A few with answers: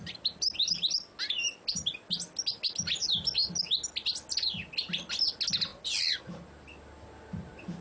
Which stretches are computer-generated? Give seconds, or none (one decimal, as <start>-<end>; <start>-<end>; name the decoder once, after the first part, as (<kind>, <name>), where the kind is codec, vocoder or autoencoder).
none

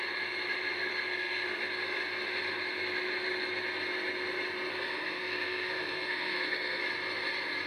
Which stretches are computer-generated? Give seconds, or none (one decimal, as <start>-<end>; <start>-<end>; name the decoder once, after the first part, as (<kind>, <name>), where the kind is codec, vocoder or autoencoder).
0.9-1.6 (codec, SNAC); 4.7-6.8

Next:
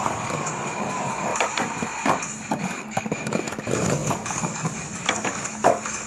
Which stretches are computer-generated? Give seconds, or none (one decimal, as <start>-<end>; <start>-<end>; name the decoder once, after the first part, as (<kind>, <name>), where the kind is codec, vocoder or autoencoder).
0.0-1.3 (codec, DAC); 2.5-6.1

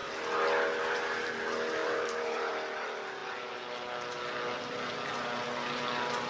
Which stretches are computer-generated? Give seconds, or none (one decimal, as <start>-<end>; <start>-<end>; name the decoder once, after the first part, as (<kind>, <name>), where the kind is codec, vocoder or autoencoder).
1.8-2.5 (vocoder, BigVGAN v2)

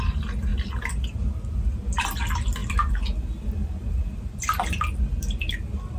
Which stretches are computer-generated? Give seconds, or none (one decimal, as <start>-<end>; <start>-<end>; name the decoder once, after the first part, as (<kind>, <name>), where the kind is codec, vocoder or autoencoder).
none

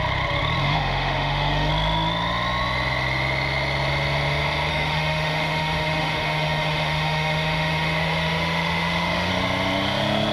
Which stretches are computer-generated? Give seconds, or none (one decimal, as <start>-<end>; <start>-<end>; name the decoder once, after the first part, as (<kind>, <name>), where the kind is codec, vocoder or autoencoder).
0.6-1.7 (autoencoder, DAC-VAE); 4.7-9.3

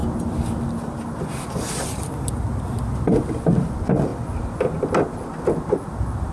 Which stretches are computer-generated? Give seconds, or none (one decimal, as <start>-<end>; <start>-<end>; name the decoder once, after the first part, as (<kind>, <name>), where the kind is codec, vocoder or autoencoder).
none